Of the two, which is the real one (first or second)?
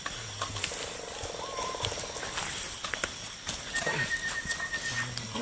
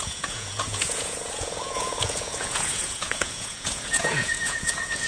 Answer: first